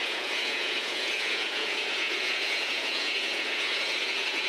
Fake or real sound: fake